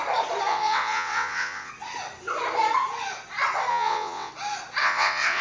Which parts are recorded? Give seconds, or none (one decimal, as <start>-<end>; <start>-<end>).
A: 0.0-0.5; 1.7-3.7; 4.3-4.8